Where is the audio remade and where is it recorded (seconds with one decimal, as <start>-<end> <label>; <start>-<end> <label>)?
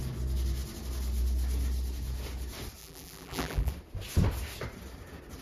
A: 0.0-2.8 recorded; 2.8-3.7 remade; 3.7-5.4 recorded